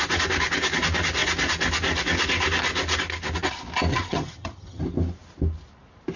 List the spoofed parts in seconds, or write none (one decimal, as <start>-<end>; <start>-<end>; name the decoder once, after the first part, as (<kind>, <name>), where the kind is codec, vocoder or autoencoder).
3.9-4.8 (vocoder, HiFi-GAN)

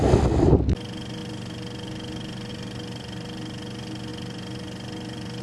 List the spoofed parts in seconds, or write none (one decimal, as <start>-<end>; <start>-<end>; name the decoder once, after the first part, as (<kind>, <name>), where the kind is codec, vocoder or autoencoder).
none